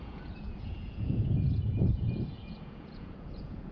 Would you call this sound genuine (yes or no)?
no